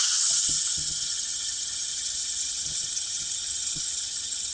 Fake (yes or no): yes